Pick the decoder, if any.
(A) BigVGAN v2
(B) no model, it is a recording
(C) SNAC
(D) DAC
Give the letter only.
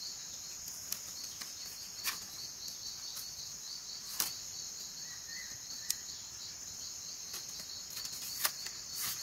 B